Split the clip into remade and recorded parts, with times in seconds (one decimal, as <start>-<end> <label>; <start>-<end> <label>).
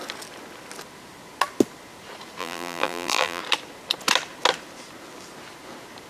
0.0-2.4 recorded; 2.4-3.4 remade; 3.4-6.1 recorded